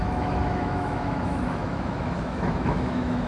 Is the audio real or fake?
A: fake